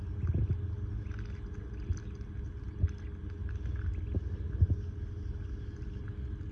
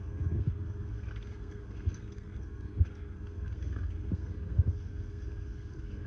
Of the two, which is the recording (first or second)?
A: first